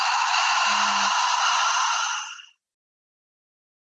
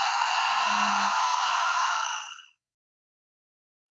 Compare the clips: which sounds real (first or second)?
first